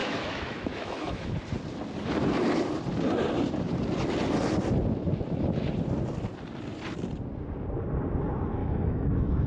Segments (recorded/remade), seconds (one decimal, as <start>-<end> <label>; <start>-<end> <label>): 0.0-1.3 remade; 1.3-8.6 recorded; 8.6-9.5 remade